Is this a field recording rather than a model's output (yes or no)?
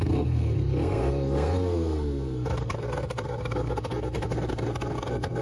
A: no